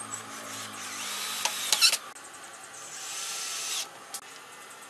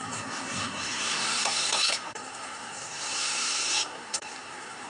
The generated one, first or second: second